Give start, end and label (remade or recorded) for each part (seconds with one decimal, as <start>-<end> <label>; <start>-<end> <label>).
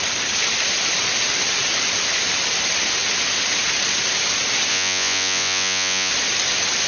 0.0-4.7 recorded; 4.7-6.1 remade; 6.1-6.9 recorded